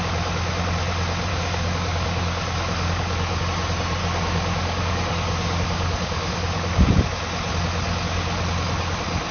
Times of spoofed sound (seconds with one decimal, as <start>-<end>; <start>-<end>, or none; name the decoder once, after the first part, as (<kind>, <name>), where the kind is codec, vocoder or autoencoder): 1.3-3.4 (codec, DAC); 4.0-6.9